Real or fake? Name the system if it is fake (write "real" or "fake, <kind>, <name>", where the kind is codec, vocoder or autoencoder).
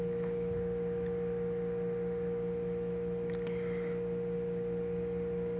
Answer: real